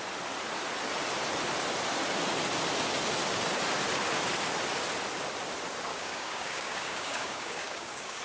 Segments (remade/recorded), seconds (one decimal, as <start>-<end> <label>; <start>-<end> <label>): 0.0-5.9 recorded; 5.9-8.2 remade